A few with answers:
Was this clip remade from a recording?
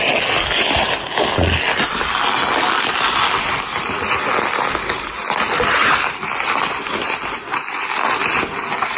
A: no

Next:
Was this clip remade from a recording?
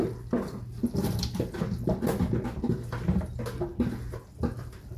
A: no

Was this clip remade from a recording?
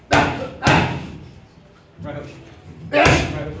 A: no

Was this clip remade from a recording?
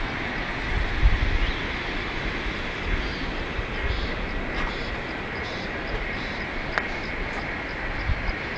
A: no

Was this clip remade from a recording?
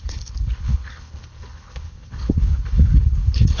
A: yes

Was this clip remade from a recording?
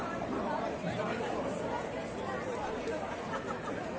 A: no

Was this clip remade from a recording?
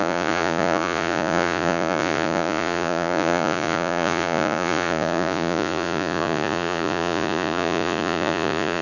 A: yes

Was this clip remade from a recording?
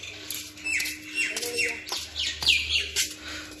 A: no